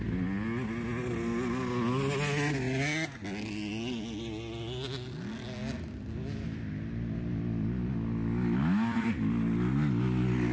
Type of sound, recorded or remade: recorded